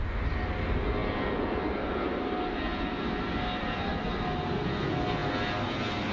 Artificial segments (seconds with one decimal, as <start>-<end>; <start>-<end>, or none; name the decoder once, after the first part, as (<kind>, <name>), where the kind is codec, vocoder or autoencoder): none